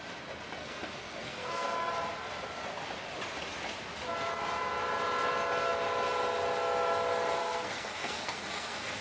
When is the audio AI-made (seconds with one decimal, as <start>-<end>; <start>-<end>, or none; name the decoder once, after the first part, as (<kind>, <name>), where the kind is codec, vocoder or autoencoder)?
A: 0.6-1.9 (codec, SNAC); 7.4-9.0